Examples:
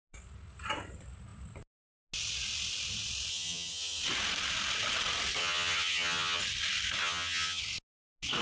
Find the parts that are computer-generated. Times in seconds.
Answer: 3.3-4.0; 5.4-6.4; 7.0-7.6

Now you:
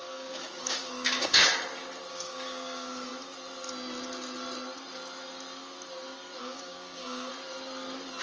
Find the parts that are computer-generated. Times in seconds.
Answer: 0.0-1.5; 2.1-3.1; 6.4-7.3

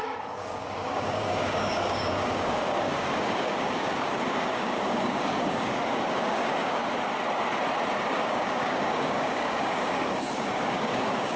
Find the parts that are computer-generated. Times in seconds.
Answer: 0.0-6.8; 8.1-11.4